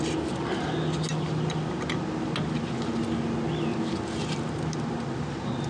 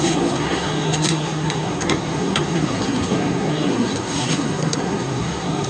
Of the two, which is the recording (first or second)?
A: first